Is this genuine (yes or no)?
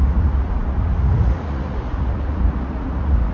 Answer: no